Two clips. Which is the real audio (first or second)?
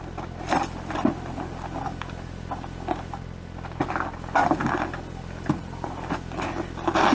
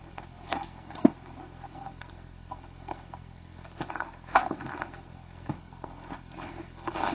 first